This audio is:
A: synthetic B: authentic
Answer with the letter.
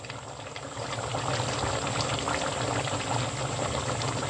B